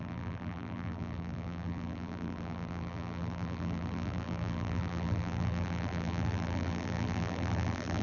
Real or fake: fake